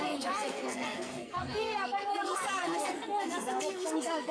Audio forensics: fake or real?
fake